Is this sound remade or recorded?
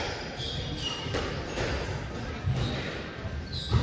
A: recorded